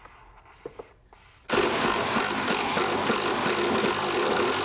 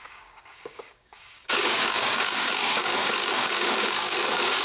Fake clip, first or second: second